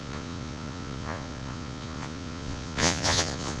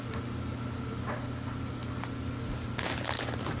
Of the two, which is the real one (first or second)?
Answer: second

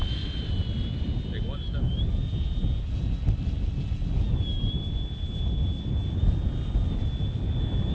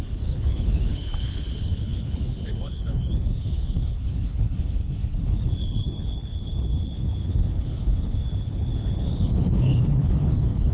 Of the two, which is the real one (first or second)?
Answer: first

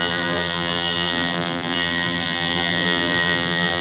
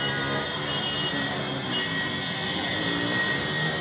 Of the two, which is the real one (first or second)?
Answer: second